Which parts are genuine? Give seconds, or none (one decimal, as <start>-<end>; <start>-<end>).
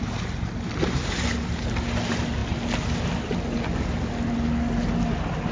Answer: 0.0-5.5